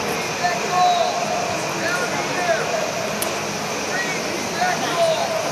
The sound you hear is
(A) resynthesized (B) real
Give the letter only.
B